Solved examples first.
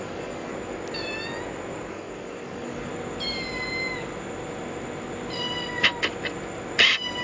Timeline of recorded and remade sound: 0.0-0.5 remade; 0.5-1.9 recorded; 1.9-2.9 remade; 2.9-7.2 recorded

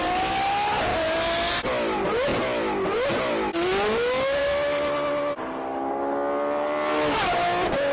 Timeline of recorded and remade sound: 0.0-7.9 recorded

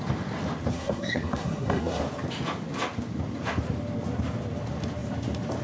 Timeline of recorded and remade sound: 0.0-0.7 recorded; 0.7-2.0 remade; 2.0-5.6 recorded

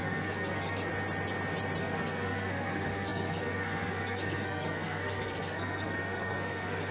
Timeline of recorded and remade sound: 0.0-0.9 remade; 0.9-1.8 recorded; 1.8-6.9 remade

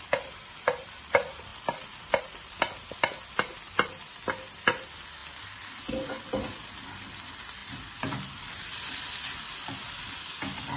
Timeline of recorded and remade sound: 0.0-10.8 recorded